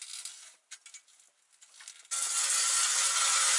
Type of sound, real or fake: real